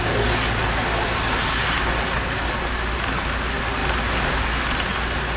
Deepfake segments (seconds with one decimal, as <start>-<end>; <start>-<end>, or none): none